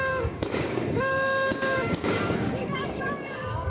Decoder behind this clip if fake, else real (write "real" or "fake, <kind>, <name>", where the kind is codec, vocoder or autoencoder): fake, codec, DAC